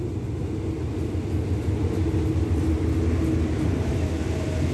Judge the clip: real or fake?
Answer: real